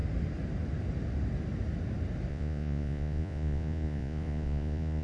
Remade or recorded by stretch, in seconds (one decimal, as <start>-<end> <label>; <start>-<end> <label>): 0.0-2.3 recorded; 2.3-5.0 remade